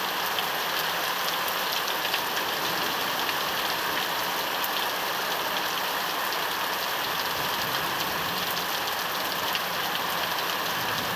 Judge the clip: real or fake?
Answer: real